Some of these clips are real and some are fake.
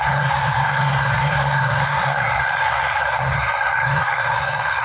fake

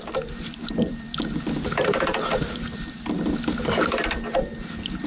fake